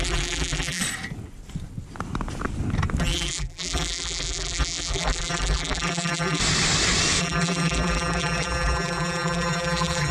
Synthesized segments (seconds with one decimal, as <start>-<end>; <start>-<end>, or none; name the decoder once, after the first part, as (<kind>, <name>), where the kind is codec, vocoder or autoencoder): 0.0-0.8 (vocoder, BigVGAN v2); 3.0-6.4; 7.2-10.1